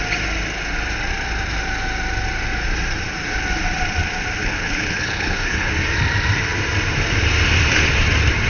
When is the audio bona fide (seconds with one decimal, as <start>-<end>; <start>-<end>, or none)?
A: 0.0-4.4; 5.7-8.5